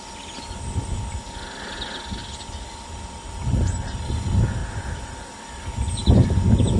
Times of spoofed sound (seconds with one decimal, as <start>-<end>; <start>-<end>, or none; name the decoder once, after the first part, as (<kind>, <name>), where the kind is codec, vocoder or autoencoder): 2.2-4.1 (vocoder, BigVGAN v2); 4.6-5.6